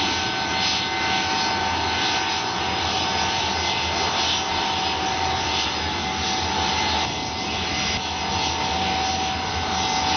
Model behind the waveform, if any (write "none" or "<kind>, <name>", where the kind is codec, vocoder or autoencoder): none